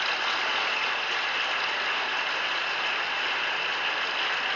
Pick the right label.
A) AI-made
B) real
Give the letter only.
B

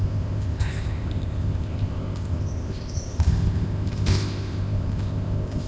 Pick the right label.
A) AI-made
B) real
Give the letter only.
A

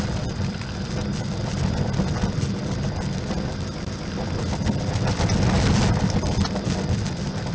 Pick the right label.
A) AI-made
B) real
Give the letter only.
B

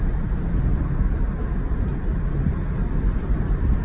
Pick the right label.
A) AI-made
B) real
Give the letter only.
B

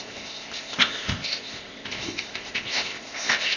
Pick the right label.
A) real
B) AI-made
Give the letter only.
B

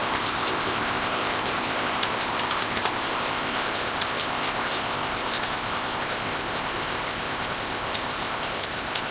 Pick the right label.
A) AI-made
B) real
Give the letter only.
A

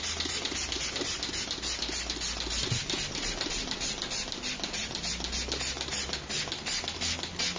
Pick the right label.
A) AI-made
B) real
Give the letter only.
B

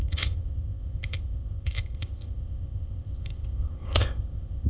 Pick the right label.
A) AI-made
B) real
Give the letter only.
A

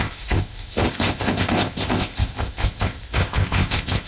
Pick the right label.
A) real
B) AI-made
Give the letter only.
B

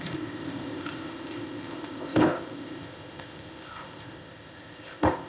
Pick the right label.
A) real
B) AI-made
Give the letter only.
B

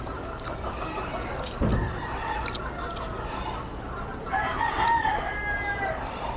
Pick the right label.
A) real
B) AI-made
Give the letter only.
A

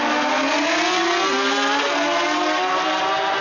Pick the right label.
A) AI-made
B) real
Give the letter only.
B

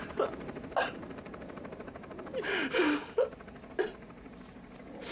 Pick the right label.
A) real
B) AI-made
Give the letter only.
A